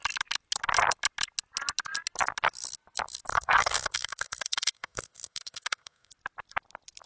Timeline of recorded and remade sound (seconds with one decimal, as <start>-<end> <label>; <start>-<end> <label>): 0.0-3.3 recorded; 3.3-6.1 remade; 6.1-7.1 recorded